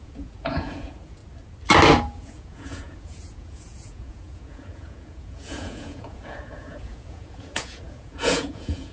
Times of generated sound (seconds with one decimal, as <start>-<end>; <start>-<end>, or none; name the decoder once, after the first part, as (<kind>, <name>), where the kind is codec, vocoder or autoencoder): 0.0-1.2 (vocoder, Vocos); 2.0-8.9